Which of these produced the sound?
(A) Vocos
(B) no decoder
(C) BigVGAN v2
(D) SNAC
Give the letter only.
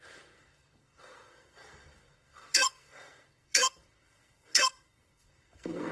D